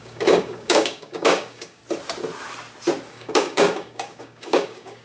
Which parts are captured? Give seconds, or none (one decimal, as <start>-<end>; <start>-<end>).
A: 1.8-3.1